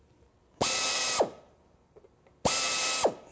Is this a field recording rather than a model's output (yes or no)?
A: yes